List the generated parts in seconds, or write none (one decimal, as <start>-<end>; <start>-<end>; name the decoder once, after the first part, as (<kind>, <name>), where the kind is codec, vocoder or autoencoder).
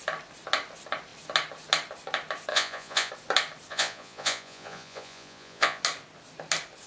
2.5-3.1 (vocoder, Vocos); 3.7-5.8